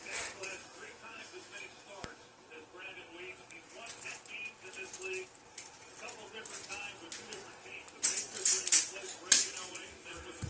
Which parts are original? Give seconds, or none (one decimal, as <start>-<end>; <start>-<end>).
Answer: 0.0-0.6; 2.5-10.5